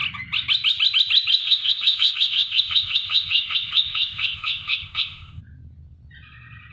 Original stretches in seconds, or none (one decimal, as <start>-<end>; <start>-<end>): 0.0-1.4; 5.4-6.7